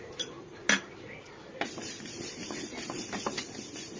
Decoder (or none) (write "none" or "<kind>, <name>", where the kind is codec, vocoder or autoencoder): none